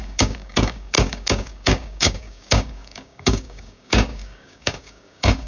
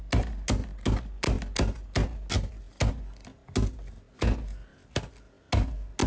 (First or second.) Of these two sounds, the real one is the second